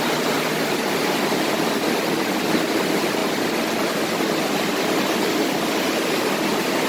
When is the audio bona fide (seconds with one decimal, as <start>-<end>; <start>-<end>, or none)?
0.0-6.9